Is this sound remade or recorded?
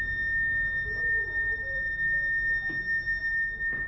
recorded